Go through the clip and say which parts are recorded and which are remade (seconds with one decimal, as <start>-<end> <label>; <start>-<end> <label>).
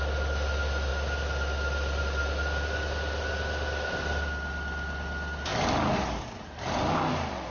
0.0-7.5 recorded